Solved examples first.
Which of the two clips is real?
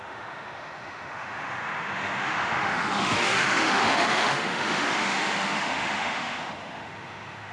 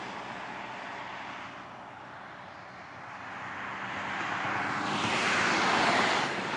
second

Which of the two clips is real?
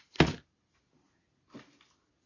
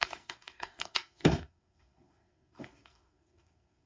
first